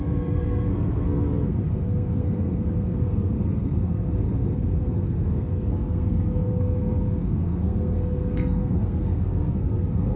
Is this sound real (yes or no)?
no